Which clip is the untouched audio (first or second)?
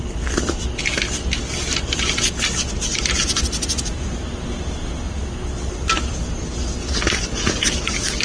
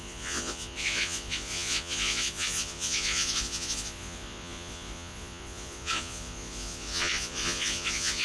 first